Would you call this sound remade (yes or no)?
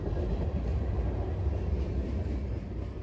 no